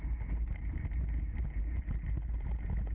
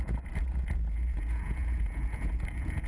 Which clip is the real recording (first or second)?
first